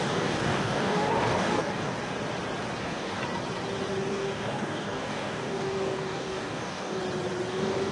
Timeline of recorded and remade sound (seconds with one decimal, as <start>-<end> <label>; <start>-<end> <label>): 0.0-1.9 remade; 1.9-2.8 recorded; 2.8-3.2 remade; 3.2-4.1 recorded; 4.1-7.0 remade; 7.0-7.5 recorded; 7.5-7.9 remade

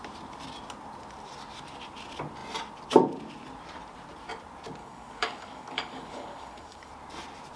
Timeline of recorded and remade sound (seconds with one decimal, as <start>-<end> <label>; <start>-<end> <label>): 0.0-4.8 recorded; 4.8-6.9 remade; 6.9-7.6 recorded

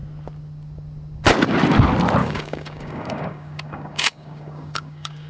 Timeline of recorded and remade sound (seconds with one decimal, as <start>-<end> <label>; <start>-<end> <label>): 0.0-2.2 recorded; 2.2-5.3 remade

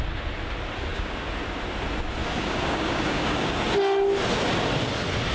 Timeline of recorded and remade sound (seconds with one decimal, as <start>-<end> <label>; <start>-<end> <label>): 0.0-0.9 recorded; 0.9-1.4 remade; 1.4-2.2 recorded; 2.2-3.5 remade; 3.5-5.3 recorded

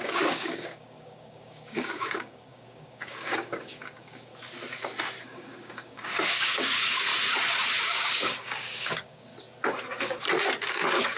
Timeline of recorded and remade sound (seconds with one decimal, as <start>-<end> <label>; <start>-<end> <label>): 0.0-4.3 remade; 4.3-5.2 recorded; 5.2-7.1 remade; 7.1-7.8 recorded; 7.8-9.3 remade; 9.3-10.7 recorded; 10.7-11.2 remade

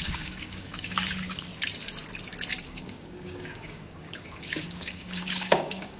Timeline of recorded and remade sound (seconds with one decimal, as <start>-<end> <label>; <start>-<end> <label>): 0.0-1.5 remade; 1.5-2.6 recorded; 2.6-6.0 remade